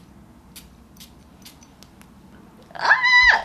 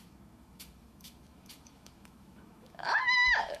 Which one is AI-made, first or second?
second